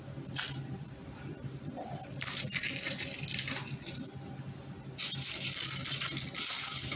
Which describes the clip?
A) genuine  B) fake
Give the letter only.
A